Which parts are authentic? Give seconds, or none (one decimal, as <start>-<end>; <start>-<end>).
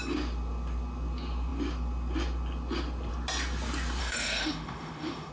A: 0.0-4.0